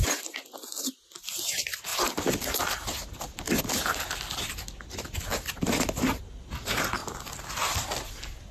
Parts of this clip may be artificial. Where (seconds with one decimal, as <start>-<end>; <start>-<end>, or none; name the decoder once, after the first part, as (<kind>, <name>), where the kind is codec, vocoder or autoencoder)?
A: none